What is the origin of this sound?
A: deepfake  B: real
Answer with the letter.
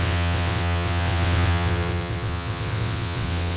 A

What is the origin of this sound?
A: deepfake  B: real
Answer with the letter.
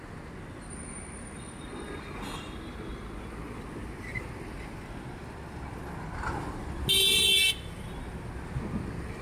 B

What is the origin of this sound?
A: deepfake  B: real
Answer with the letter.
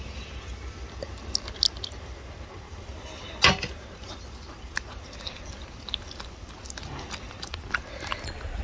B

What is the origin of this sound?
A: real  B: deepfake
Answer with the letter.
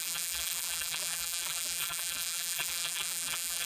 B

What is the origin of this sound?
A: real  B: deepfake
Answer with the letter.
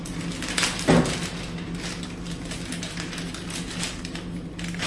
A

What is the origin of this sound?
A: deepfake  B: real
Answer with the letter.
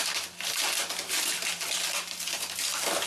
B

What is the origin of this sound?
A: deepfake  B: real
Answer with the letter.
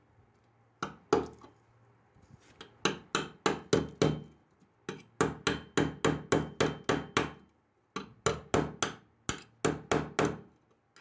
B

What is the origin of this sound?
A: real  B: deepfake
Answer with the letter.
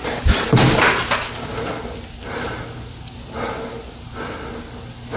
A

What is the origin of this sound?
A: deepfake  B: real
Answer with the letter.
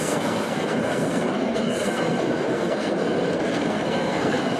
A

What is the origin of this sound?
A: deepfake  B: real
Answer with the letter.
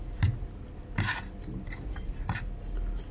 B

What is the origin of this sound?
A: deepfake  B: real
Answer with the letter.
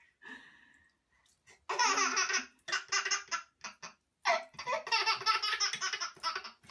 B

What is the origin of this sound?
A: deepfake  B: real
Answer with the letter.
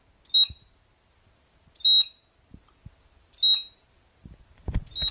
B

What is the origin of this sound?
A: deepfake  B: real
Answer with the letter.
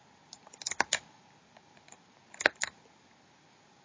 A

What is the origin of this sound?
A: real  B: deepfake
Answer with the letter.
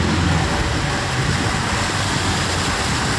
A